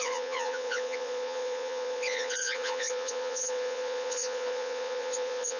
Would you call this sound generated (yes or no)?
yes